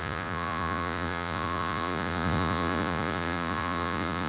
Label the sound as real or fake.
fake